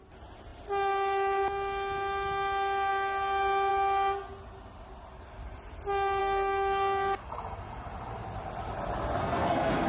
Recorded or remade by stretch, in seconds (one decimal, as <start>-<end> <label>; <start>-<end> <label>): 0.0-6.2 recorded; 6.2-7.2 remade; 7.2-9.2 recorded; 9.2-9.9 remade